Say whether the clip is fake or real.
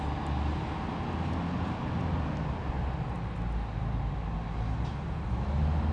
real